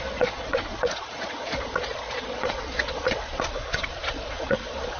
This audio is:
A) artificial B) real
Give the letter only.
A